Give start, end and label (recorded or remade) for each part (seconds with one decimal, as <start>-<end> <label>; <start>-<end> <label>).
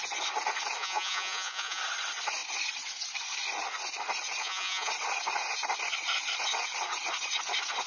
0.0-0.8 recorded; 0.8-1.8 remade; 1.8-4.4 recorded; 4.4-4.9 remade; 4.9-7.9 recorded